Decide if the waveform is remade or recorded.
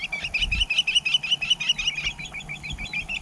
recorded